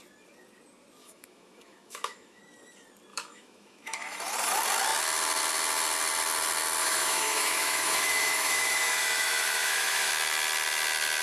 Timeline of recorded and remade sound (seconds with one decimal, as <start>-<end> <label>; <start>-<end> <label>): 0.0-1.0 recorded; 1.0-2.4 remade; 2.4-3.1 recorded; 3.1-4.2 remade; 4.2-6.8 recorded; 6.8-10.1 remade; 10.1-11.2 recorded